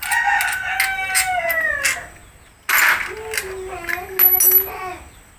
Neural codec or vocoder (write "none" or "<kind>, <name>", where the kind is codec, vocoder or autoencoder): none